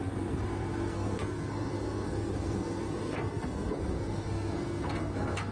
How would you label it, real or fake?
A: fake